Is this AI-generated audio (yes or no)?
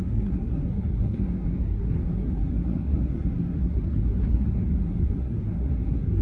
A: yes